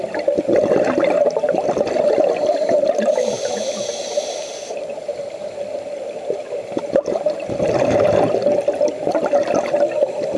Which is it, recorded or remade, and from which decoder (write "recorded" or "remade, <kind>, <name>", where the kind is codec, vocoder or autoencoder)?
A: recorded